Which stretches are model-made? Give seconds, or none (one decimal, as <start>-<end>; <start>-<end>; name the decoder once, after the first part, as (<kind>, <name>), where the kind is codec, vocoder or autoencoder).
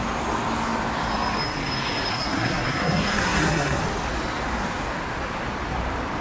2.1-3.8 (codec, SNAC)